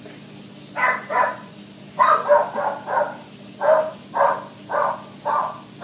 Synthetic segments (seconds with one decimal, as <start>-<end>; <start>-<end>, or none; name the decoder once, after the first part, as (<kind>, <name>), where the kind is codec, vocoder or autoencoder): 0.8-1.6 (vocoder, Vocos)